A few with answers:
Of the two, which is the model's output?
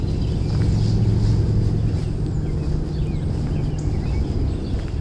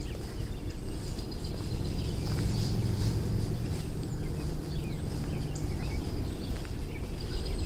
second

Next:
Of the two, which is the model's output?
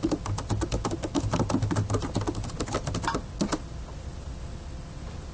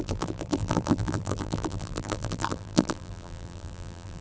second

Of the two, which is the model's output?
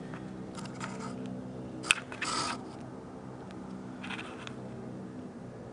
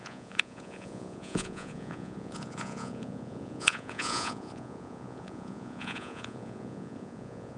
second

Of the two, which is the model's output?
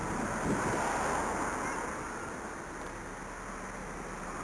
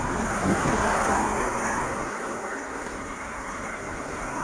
second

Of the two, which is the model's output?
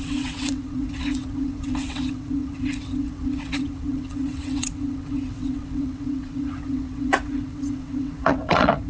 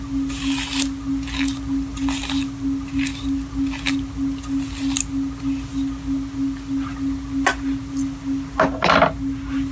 first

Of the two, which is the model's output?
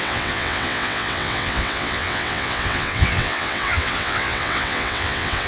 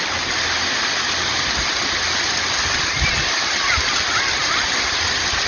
first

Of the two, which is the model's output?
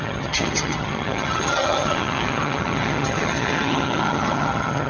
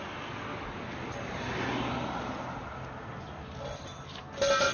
first